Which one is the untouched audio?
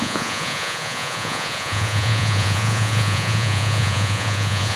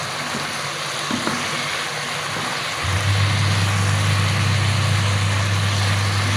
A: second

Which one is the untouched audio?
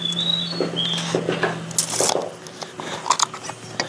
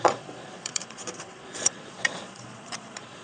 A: first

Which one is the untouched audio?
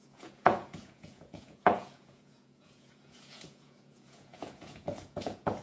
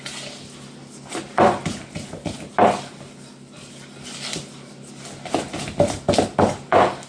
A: second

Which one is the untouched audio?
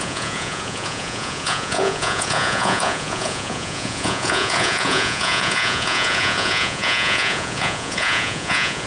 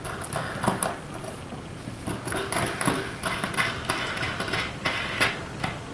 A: second